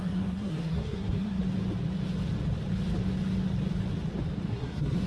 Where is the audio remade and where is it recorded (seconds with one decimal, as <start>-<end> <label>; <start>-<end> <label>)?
0.0-1.4 remade; 1.4-4.5 recorded; 4.5-5.1 remade